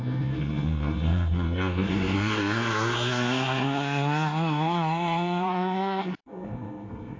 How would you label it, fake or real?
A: fake